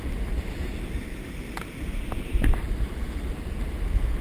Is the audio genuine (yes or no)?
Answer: yes